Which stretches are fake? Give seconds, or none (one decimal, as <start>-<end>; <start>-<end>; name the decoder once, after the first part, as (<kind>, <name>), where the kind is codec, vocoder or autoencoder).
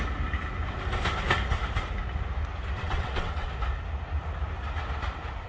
2.8-3.5 (vocoder, WaveNeXt)